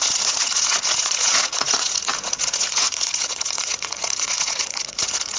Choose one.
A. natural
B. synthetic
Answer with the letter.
B